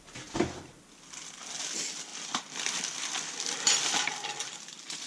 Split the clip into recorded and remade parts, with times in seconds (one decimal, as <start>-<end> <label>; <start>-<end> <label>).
0.0-2.1 recorded; 2.1-4.1 remade; 4.1-5.1 recorded